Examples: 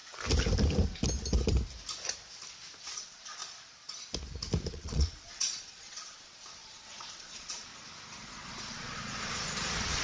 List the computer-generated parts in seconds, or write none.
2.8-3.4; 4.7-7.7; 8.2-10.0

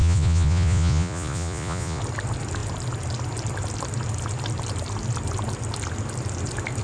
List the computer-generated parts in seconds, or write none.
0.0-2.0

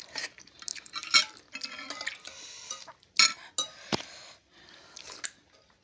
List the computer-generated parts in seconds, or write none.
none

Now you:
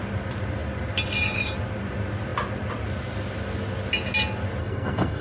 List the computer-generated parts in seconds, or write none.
4.6-5.2